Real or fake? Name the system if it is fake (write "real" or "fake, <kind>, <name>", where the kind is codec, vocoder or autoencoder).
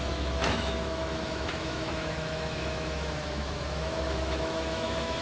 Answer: fake, autoencoder, DAC-VAE